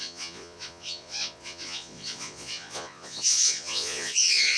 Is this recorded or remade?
remade